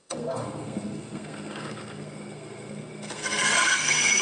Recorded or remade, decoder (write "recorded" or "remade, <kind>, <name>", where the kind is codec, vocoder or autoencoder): remade, codec, SNAC